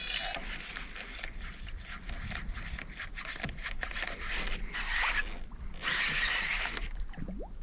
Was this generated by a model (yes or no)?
no